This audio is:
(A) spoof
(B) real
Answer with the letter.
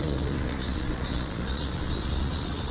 A